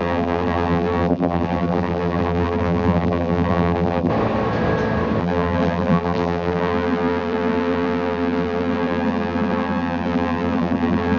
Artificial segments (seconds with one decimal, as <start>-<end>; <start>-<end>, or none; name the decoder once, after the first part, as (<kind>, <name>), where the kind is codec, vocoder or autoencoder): 0.0-4.1 (vocoder, BigVGAN v2); 5.2-11.2